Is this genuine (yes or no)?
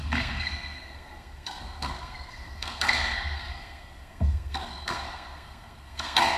no